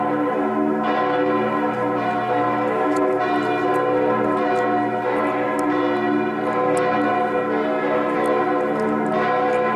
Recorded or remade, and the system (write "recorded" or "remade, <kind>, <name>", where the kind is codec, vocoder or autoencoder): recorded